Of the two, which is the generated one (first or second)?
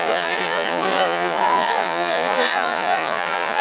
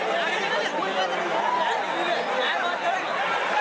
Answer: first